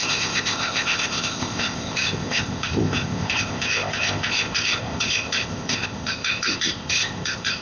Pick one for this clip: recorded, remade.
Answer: remade